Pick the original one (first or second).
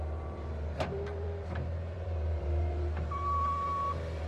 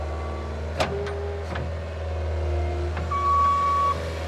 second